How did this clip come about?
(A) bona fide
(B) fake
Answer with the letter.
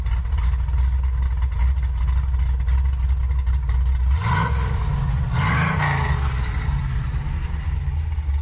A